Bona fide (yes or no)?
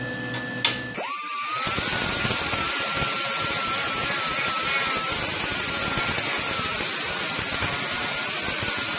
yes